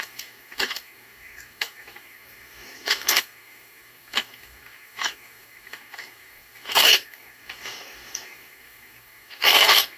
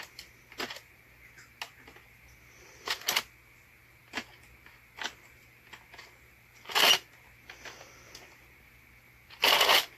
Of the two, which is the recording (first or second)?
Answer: second